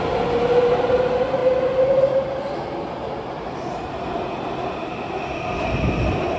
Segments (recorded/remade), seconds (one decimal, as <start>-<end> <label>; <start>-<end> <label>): 0.0-6.4 recorded